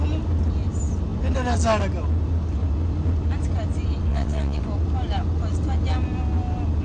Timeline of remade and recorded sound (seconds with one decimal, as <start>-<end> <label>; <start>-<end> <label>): 0.0-4.1 recorded; 4.1-4.6 remade; 4.6-6.8 recorded